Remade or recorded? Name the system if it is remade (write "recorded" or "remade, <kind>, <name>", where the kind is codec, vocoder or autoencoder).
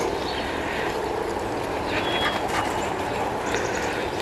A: recorded